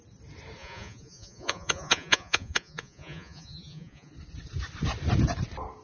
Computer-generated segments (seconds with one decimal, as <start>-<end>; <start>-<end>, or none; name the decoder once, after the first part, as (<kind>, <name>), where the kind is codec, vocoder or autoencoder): 0.6-4.1 (vocoder, Vocos)